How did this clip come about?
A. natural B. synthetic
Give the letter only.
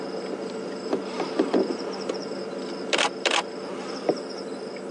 A